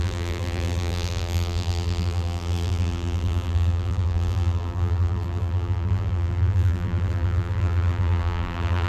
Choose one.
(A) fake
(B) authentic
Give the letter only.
A